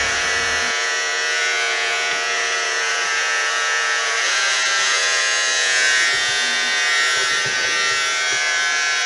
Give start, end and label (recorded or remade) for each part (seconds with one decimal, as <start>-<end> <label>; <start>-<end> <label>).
0.0-9.1 remade